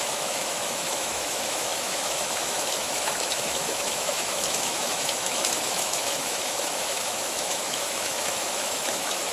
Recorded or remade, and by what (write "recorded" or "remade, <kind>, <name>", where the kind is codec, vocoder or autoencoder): remade, autoencoder, DAC-VAE